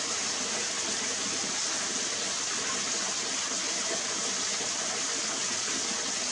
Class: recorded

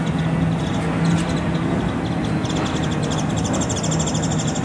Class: recorded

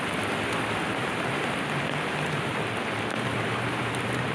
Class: remade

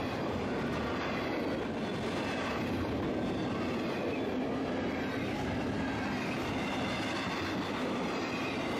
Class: recorded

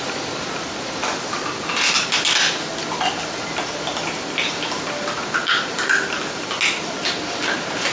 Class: recorded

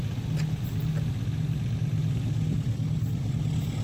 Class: recorded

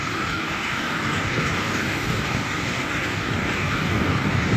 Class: remade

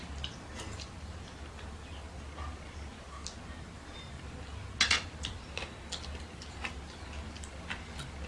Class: recorded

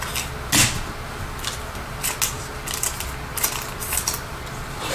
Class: recorded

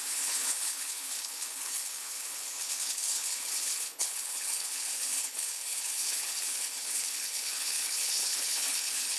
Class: remade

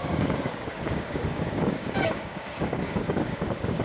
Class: remade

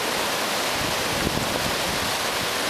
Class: recorded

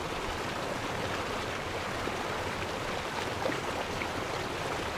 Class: remade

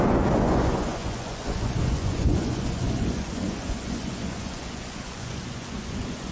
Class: remade